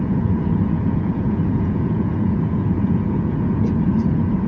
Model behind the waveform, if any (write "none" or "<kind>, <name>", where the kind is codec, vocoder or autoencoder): vocoder, Vocos